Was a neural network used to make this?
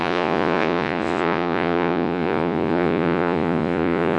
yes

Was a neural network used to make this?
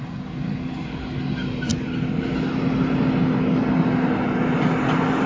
no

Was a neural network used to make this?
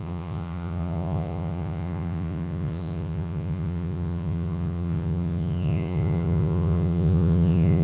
yes